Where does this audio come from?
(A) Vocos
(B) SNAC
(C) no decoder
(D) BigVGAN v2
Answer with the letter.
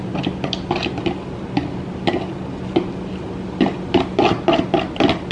C